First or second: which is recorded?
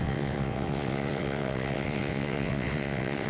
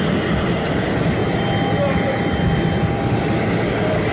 second